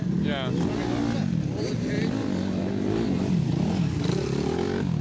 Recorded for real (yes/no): yes